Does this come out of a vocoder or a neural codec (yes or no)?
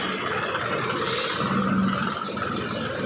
no